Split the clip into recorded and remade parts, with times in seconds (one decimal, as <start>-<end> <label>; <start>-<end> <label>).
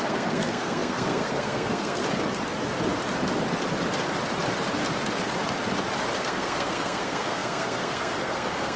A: 0.0-2.0 remade; 2.0-6.2 recorded; 6.2-8.8 remade